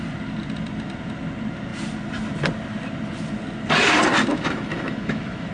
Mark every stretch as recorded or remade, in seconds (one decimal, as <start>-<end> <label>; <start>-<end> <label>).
0.0-4.3 recorded; 4.3-5.5 remade